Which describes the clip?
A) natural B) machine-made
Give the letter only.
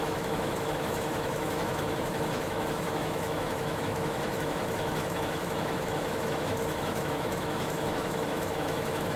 B